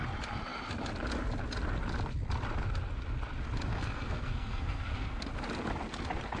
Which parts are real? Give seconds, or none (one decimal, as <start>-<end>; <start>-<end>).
0.0-3.7; 5.3-6.4